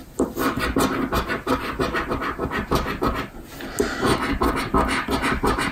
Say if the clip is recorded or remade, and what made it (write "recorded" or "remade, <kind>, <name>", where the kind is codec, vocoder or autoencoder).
recorded